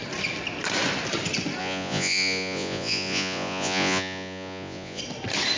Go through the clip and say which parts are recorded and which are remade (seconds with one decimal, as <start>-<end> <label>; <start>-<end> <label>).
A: 0.0-1.6 recorded; 1.6-5.0 remade; 5.0-5.6 recorded